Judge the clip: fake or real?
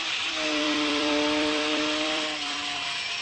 fake